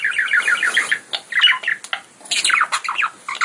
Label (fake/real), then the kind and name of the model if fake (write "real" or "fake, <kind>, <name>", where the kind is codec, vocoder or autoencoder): real